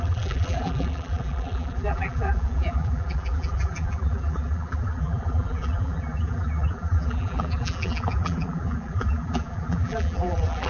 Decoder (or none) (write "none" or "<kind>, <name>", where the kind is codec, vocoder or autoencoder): vocoder, BigVGAN v2